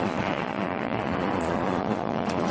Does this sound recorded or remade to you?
remade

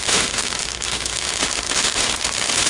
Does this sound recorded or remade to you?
remade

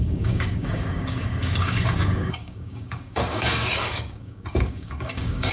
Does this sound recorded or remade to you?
remade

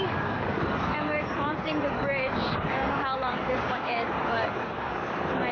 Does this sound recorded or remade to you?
remade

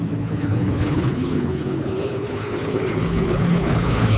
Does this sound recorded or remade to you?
remade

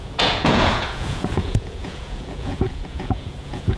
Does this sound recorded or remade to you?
remade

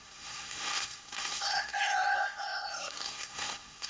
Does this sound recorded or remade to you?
remade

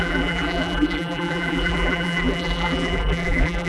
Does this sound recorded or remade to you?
remade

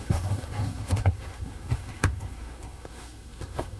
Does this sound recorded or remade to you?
remade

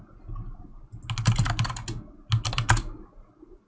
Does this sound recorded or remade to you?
recorded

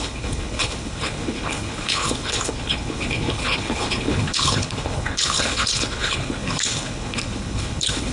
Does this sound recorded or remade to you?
remade